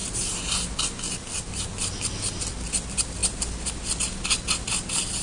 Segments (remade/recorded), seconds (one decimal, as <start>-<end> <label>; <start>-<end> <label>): 0.0-5.2 recorded